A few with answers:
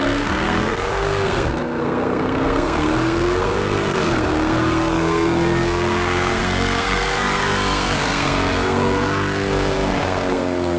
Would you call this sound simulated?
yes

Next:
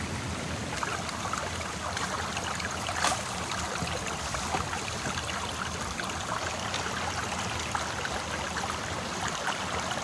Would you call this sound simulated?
no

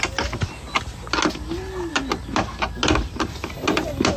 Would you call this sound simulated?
no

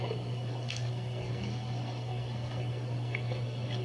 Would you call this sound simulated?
yes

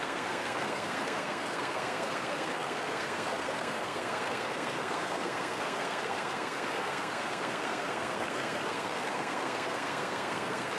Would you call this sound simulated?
yes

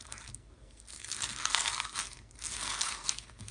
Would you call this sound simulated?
yes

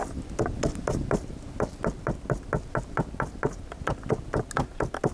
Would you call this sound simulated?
no